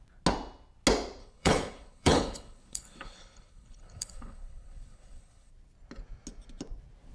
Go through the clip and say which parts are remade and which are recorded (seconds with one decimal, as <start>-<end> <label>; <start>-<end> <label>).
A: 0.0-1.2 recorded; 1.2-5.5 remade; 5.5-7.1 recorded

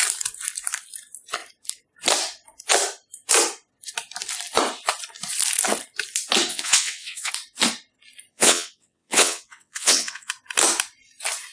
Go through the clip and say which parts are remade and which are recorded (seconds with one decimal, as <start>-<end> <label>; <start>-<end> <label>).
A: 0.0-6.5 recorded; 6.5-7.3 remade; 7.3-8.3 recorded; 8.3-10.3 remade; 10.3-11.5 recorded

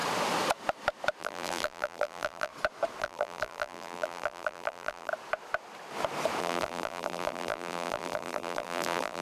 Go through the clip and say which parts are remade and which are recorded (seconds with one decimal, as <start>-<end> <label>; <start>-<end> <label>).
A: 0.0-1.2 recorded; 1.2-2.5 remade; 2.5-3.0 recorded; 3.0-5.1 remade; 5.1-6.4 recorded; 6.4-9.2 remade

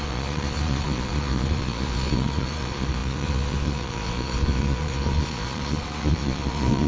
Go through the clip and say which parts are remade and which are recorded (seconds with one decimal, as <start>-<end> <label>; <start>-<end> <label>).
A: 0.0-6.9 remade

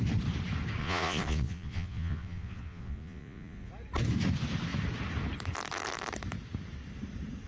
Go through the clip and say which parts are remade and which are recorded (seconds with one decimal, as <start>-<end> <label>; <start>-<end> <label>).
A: 0.0-0.8 recorded; 0.8-3.7 remade; 3.7-7.5 recorded